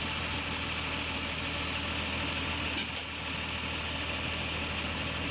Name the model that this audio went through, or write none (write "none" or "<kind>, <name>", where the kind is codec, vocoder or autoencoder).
none